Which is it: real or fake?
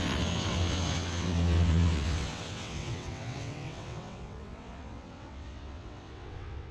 fake